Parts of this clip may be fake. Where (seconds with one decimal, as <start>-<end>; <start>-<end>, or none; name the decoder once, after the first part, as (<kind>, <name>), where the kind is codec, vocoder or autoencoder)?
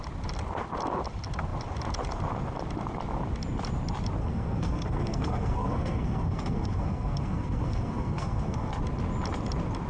4.2-8.7 (codec, SNAC)